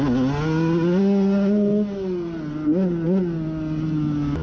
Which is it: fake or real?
real